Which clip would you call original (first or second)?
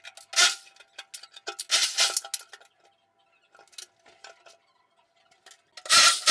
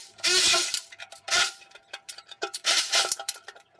first